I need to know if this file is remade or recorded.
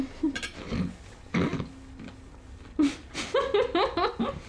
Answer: recorded